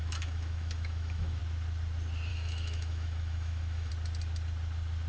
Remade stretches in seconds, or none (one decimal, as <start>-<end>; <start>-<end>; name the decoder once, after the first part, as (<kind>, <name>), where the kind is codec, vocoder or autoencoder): 0.0-1.4 (autoencoder, DAC-VAE); 2.3-3.9